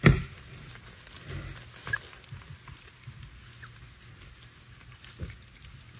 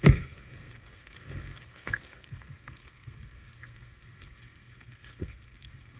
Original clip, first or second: first